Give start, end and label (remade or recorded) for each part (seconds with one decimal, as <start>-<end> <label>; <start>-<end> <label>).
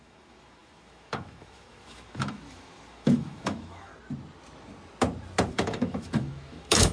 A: 0.0-3.9 remade; 3.9-5.5 recorded; 5.5-6.9 remade